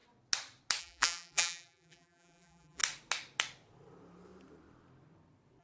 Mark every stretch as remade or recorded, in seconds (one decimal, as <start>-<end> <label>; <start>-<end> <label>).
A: 0.0-0.8 recorded; 0.8-2.8 remade; 2.8-5.6 recorded